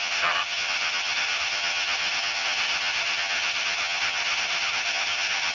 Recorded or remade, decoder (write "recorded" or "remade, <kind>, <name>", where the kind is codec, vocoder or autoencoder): remade, vocoder, HiFi-GAN